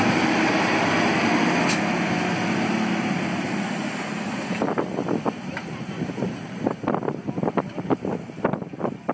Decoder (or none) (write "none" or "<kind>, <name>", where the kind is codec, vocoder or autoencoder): none